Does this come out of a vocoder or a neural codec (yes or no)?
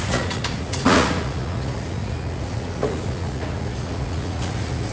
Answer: yes